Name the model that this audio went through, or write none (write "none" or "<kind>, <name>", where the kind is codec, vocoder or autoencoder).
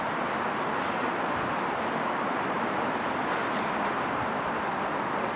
none